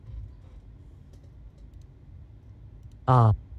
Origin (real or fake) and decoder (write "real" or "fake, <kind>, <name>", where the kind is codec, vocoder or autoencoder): real